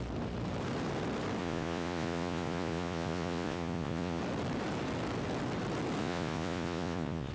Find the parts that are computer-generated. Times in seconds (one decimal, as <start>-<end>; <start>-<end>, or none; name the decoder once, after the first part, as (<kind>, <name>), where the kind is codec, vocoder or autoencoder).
1.4-4.2 (vocoder, Vocos); 6.0-7.3